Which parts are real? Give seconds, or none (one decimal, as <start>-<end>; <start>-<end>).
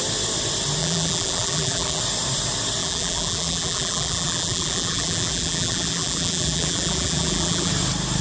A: 0.0-0.8; 2.0-2.8; 7.7-8.2